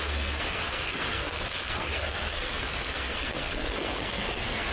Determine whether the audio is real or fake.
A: fake